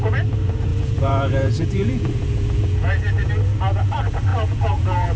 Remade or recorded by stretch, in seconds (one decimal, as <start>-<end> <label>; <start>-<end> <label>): 0.0-0.7 recorded; 0.7-3.3 remade; 3.3-4.3 recorded; 4.3-5.2 remade